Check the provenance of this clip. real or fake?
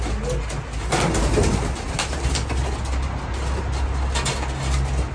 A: real